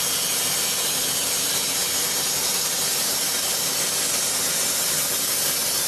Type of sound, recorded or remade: recorded